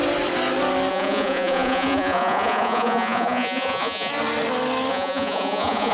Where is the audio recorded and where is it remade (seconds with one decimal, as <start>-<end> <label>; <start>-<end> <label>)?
0.0-0.9 recorded; 0.9-4.1 remade; 4.1-4.9 recorded; 4.9-5.9 remade